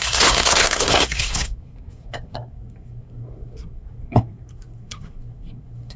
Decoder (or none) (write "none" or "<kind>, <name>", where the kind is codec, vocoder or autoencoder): codec, SNAC